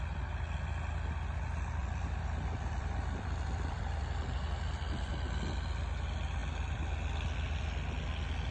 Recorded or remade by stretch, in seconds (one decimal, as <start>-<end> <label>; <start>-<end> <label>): 0.0-1.8 recorded; 1.8-5.1 remade; 5.1-8.5 recorded